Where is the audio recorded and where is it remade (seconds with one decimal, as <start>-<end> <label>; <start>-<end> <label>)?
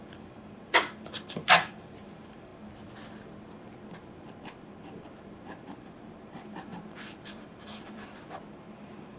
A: 0.0-2.5 remade; 2.5-4.7 recorded; 4.7-9.2 remade